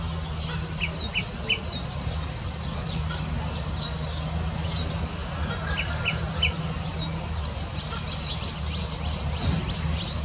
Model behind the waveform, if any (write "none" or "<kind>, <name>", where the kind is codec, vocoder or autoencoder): none